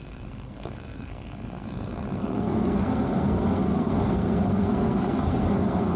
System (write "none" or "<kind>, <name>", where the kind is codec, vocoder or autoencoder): codec, SNAC